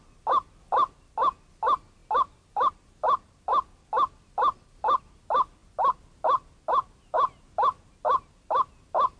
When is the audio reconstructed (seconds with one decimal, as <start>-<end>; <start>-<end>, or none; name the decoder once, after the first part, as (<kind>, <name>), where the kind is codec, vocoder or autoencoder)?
none